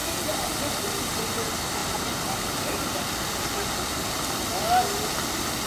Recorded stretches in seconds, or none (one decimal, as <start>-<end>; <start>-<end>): 0.0-5.7